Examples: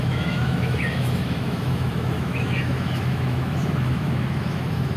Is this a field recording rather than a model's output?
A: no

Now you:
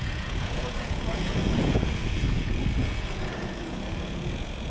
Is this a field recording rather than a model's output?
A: no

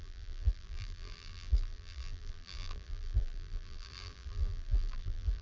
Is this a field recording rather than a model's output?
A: no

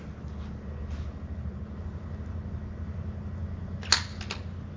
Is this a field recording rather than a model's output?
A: yes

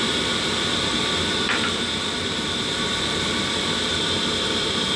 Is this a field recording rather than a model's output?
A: no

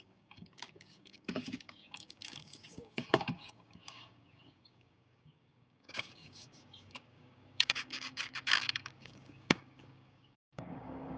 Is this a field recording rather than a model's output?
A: no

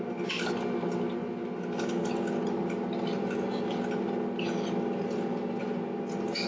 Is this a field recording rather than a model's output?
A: yes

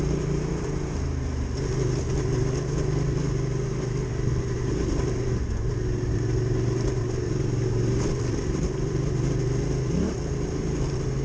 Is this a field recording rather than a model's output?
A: yes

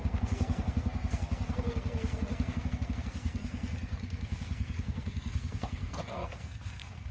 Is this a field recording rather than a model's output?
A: no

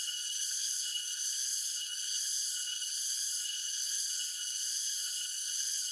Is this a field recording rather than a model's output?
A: no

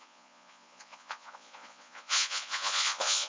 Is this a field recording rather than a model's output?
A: no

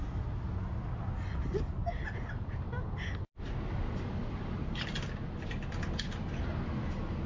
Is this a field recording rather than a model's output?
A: yes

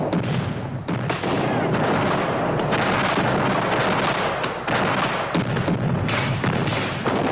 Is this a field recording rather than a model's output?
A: yes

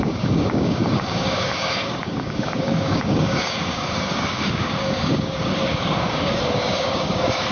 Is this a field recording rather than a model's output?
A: no